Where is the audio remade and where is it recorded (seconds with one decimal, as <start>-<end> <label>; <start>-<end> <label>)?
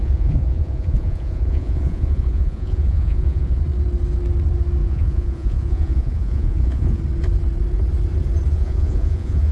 0.0-3.6 remade; 3.6-4.8 recorded; 4.8-7.0 remade; 7.0-8.5 recorded; 8.5-9.5 remade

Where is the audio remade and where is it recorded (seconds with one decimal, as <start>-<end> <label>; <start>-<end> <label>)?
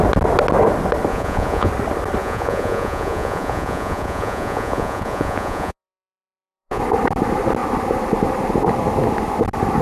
0.0-1.1 recorded; 1.1-1.7 remade; 1.7-2.2 recorded; 2.2-6.8 remade; 6.8-9.8 recorded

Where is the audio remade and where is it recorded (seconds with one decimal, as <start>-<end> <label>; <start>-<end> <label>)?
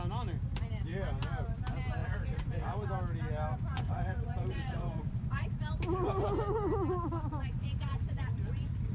0.0-2.0 recorded; 2.0-2.9 remade; 2.9-3.7 recorded; 3.7-5.4 remade; 5.4-8.9 recorded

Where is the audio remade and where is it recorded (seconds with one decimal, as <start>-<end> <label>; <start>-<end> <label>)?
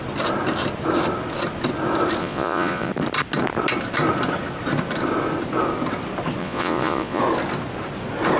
0.0-2.2 recorded; 2.2-2.9 remade; 2.9-6.4 recorded; 6.4-7.2 remade; 7.2-8.4 recorded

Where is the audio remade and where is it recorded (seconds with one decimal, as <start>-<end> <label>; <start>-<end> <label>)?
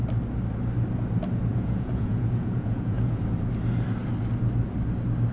0.0-1.5 recorded; 1.5-3.2 remade; 3.2-5.3 recorded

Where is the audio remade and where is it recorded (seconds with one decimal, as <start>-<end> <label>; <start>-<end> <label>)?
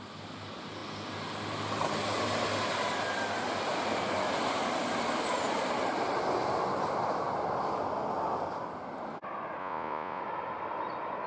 0.0-9.6 recorded; 9.6-10.2 remade; 10.2-11.3 recorded